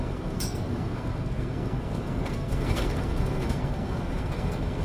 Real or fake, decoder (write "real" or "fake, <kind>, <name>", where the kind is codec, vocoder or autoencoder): fake, codec, SNAC